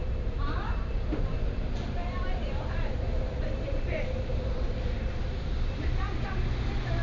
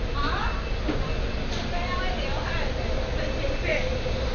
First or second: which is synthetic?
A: first